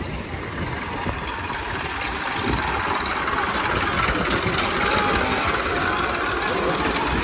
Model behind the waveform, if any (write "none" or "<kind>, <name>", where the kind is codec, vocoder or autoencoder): none